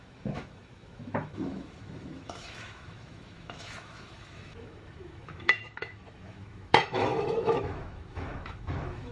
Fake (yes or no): yes